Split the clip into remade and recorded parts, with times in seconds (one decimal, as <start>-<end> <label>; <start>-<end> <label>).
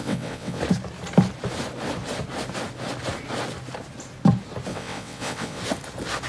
0.0-0.6 remade; 0.6-4.7 recorded; 4.7-5.6 remade; 5.6-6.3 recorded